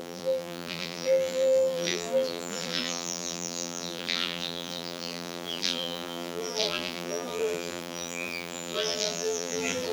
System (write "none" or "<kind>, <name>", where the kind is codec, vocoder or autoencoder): vocoder, BigVGAN v2